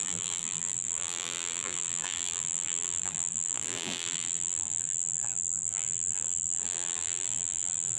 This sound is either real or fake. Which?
fake